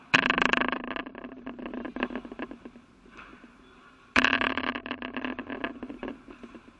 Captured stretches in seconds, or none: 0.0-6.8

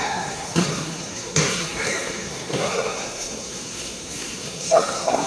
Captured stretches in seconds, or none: none

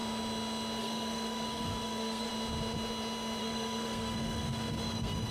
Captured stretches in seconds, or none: 0.0-0.8; 2.3-3.4

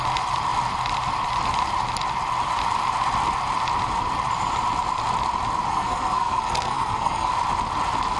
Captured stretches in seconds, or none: 0.0-5.7; 7.3-8.2